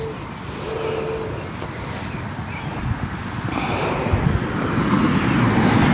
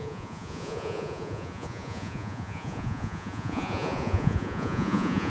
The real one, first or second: first